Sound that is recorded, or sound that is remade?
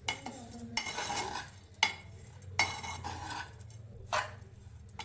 recorded